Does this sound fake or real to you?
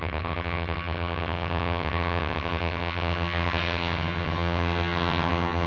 fake